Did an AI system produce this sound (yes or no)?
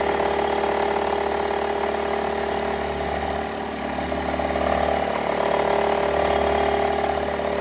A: no